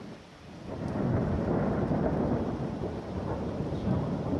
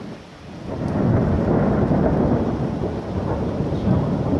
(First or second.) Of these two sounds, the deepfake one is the first